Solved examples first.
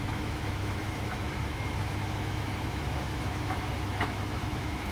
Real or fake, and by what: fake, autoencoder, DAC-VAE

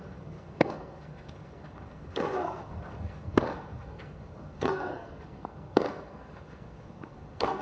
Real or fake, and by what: fake, codec, SNAC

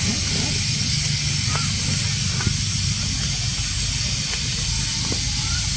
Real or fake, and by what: real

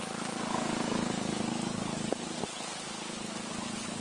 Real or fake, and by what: fake, codec, DAC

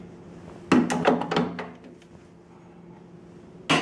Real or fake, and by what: real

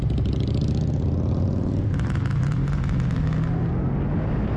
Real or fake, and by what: real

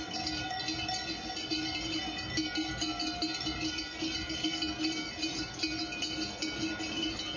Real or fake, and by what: real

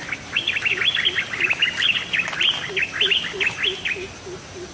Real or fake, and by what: real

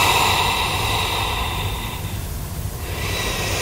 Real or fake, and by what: real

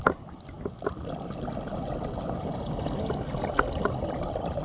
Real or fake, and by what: real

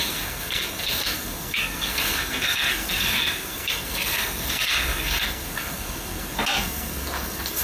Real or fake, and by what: fake, codec, SNAC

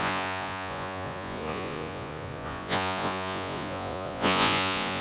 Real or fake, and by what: fake, vocoder, Vocos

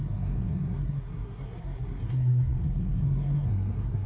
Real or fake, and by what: fake, codec, SNAC